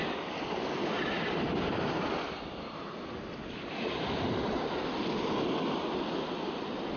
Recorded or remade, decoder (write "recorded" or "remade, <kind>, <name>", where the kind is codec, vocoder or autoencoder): recorded